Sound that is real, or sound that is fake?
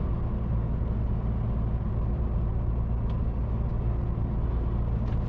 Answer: real